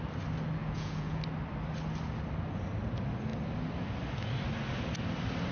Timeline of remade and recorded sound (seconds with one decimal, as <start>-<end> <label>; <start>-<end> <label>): 0.0-0.6 recorded; 0.6-1.2 remade; 1.2-5.5 recorded